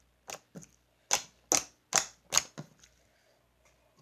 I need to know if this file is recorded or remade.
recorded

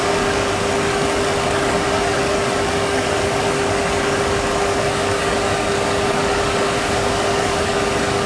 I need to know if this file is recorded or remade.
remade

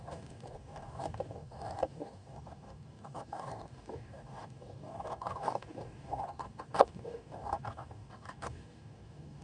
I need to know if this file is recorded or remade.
remade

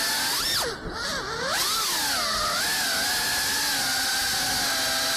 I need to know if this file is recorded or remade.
recorded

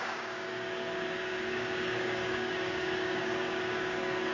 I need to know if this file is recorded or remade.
remade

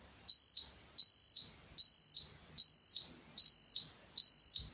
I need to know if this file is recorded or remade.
recorded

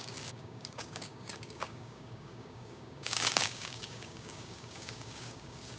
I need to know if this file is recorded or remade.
remade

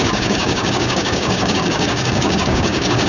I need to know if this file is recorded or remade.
remade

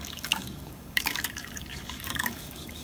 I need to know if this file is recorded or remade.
remade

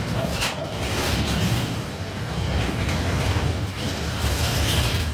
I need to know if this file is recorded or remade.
remade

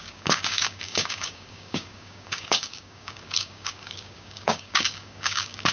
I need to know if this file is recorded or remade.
remade